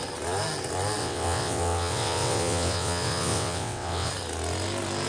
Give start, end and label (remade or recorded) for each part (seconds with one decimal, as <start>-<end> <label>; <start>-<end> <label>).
0.0-1.0 recorded; 1.0-4.1 remade; 4.1-5.1 recorded